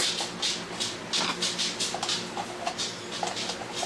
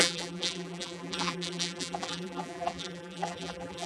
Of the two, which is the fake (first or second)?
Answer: second